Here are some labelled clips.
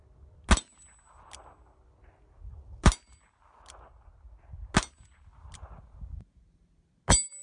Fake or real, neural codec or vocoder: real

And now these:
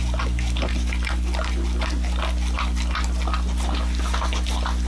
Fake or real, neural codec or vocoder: real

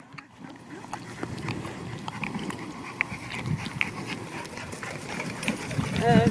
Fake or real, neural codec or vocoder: fake, vocoder, BigVGAN v2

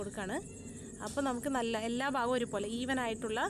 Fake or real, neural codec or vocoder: real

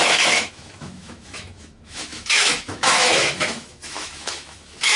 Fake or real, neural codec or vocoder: fake, autoencoder, DAC-VAE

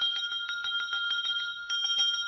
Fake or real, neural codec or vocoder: fake, codec, DAC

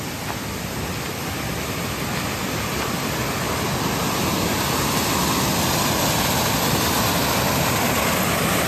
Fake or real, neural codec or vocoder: real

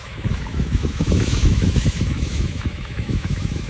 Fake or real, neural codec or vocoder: fake, autoencoder, DAC-VAE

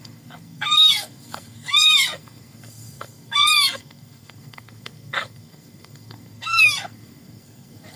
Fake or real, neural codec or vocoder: fake, codec, SNAC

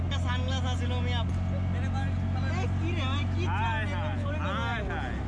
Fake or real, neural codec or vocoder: real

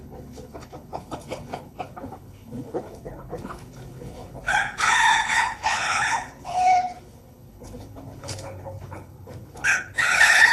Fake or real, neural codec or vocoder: fake, codec, HILCodec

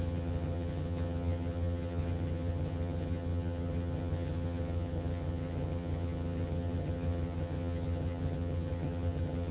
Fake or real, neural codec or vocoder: fake, vocoder, HiFi-GAN